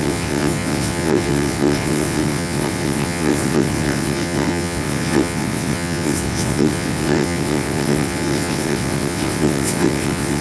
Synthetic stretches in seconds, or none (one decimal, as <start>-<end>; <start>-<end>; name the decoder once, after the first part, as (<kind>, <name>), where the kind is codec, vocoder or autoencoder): 0.0-10.4 (vocoder, WaveNeXt)